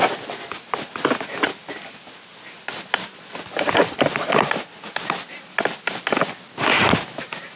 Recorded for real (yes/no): yes